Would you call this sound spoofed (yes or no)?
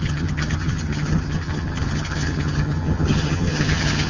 yes